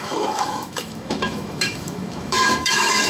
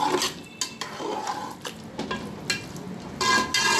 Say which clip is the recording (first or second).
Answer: second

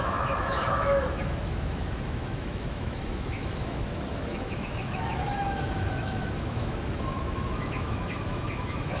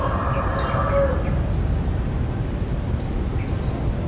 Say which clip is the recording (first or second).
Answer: second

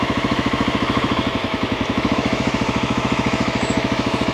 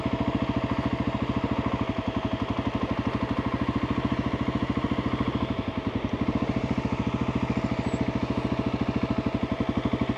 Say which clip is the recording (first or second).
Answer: second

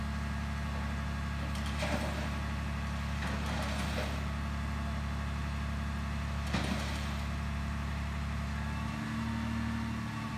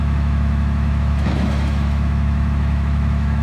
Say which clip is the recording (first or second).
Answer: first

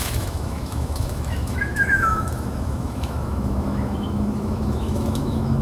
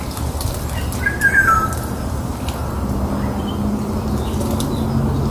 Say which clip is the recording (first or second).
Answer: second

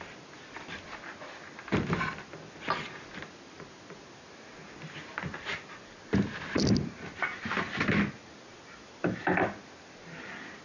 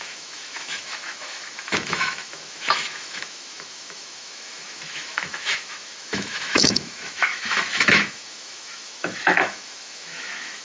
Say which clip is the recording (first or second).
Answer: first